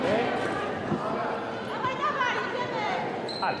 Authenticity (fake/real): real